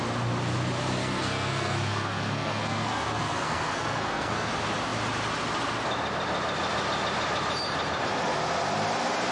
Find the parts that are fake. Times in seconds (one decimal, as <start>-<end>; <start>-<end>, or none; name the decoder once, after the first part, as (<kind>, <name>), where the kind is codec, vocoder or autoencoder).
1.0-4.5 (codec, SNAC)